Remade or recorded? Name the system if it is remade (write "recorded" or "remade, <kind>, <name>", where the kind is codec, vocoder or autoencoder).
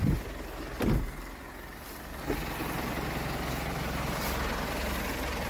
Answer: recorded